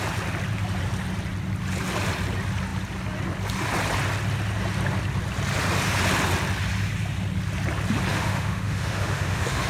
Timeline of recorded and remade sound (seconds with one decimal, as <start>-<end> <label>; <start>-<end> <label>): 0.0-8.1 recorded; 8.1-9.7 remade